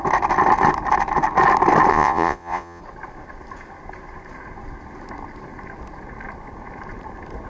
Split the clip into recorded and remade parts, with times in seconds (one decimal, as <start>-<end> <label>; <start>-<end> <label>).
0.0-1.9 recorded; 1.9-2.8 remade; 2.8-7.5 recorded